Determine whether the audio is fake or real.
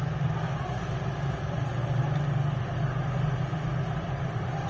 real